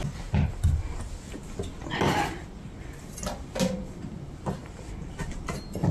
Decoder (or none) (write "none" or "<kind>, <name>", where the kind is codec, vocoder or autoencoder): none